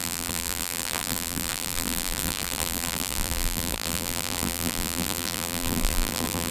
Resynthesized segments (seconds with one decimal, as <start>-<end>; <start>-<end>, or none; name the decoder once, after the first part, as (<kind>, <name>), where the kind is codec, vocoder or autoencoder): 0.0-6.5 (vocoder, BigVGAN v2)